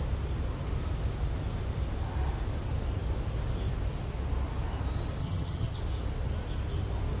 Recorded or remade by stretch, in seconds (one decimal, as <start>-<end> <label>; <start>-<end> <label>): 0.0-5.2 recorded; 5.2-5.8 remade; 5.8-7.2 recorded